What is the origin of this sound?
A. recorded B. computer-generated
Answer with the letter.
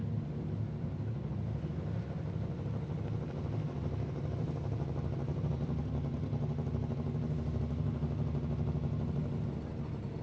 A